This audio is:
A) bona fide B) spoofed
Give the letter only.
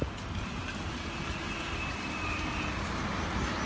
A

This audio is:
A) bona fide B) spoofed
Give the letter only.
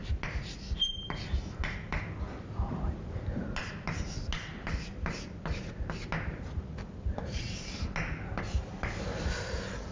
A